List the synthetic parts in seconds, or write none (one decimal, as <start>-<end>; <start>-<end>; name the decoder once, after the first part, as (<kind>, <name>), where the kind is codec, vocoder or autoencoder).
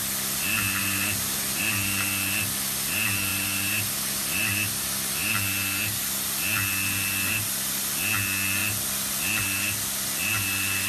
0.8-1.6 (vocoder, BigVGAN v2); 3.3-3.9